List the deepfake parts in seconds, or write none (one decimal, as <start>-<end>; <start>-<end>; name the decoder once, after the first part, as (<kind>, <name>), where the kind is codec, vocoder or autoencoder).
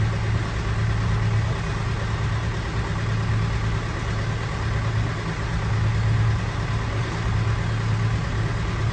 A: none